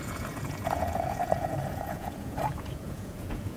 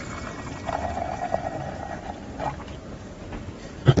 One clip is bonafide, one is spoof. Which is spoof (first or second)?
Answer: first